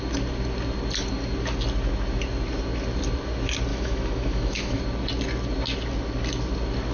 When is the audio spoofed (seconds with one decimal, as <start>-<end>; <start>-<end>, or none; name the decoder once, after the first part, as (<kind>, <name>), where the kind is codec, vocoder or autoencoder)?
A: 3.7-4.8 (autoencoder, DAC-VAE)